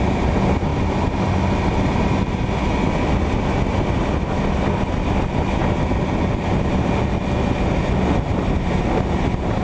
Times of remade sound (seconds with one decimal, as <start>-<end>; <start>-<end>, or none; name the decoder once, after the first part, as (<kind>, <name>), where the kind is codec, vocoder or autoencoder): none